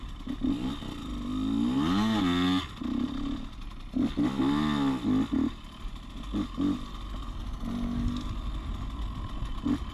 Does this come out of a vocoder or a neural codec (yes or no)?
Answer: no